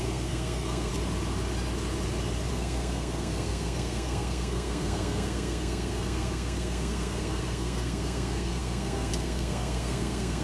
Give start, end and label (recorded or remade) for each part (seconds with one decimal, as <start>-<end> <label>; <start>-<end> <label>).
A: 0.0-0.9 remade; 0.9-2.5 recorded; 2.5-10.4 remade